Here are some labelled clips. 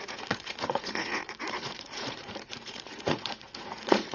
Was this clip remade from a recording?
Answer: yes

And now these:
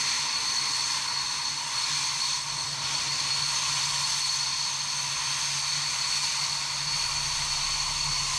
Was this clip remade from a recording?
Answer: no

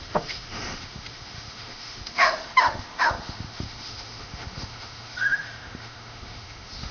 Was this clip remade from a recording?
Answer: yes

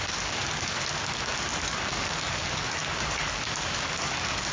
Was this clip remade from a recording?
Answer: yes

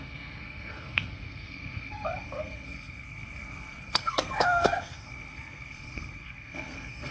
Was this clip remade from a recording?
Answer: yes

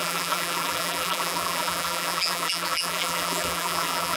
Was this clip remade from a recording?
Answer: yes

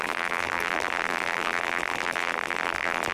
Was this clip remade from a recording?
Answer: yes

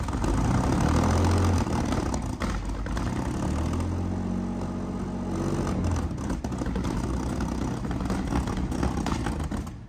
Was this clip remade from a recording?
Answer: no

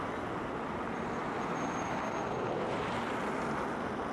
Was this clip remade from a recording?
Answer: no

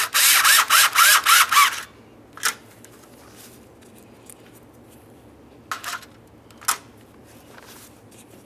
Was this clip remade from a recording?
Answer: no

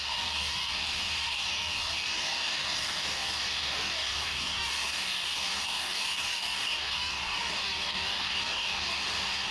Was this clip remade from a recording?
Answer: yes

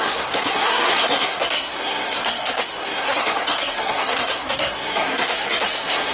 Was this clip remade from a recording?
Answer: yes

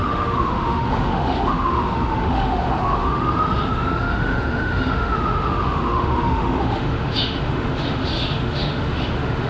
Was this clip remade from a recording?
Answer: yes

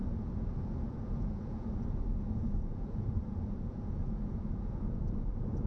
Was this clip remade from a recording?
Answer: yes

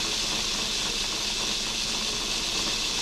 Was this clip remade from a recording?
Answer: no